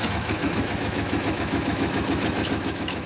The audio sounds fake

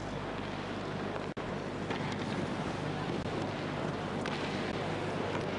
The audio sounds real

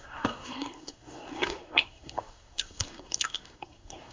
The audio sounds fake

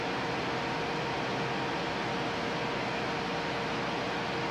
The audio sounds real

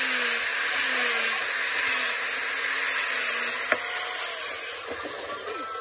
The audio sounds real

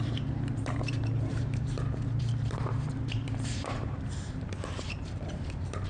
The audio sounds fake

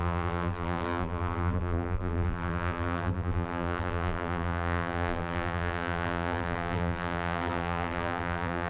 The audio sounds fake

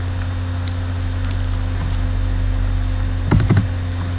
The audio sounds real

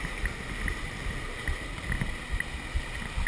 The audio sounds real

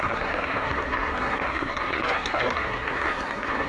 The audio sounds fake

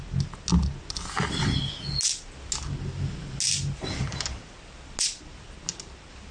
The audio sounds real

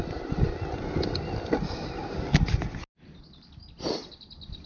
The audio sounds real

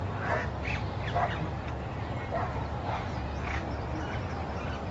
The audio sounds fake